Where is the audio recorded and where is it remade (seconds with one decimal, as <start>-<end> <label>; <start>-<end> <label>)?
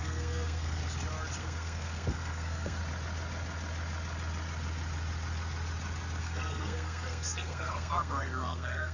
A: 0.0-0.8 remade; 0.8-1.4 recorded; 1.4-2.8 remade; 2.8-6.2 recorded; 6.2-8.9 remade